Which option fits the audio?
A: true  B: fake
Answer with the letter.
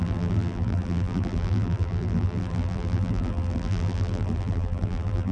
B